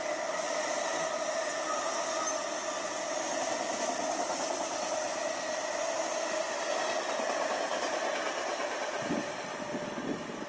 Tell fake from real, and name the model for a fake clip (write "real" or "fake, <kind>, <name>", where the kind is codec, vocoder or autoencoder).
real